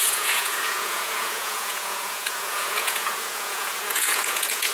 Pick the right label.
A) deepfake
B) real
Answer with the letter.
A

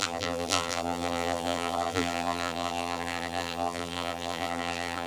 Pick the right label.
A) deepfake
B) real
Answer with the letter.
A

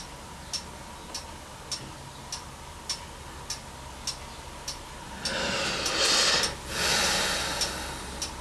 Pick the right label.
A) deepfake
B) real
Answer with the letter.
B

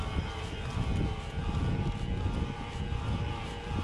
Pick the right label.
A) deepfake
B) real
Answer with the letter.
B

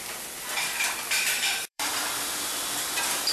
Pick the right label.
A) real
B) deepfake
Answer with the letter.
B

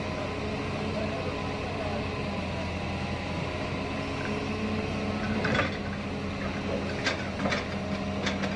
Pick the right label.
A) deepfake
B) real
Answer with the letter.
B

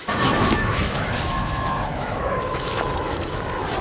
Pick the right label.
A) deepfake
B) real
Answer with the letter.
A